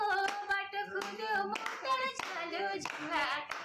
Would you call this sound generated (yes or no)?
no